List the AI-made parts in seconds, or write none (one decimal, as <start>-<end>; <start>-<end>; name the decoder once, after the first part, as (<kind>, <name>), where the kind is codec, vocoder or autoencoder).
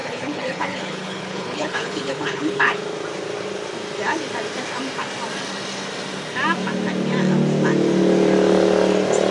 0.0-2.8 (codec, HILCodec)